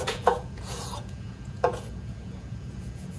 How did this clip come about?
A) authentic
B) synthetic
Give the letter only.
B